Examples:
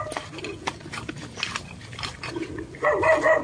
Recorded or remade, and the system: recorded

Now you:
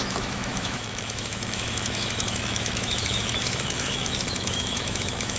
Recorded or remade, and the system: remade, autoencoder, DAC-VAE